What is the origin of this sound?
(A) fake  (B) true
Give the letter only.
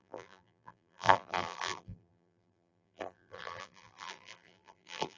A